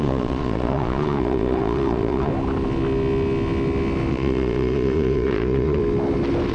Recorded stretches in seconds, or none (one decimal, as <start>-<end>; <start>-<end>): 2.3-4.1; 5.8-6.5